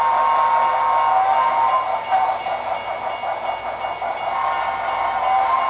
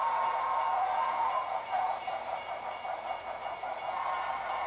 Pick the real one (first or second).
first